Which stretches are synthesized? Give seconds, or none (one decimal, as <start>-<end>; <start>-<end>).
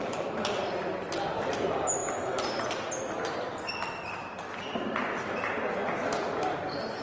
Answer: none